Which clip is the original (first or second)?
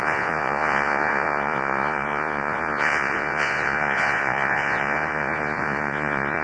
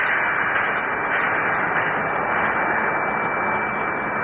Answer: second